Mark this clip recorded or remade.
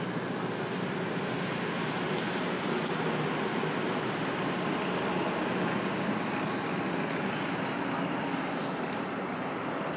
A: recorded